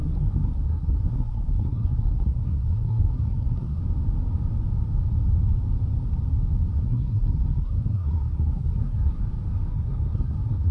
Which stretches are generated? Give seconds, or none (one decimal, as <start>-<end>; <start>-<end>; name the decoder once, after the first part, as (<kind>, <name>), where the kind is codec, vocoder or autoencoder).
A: 0.0-3.8 (codec, SNAC); 6.7-9.2; 9.7-10.7